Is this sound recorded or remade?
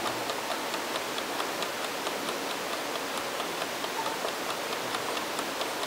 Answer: recorded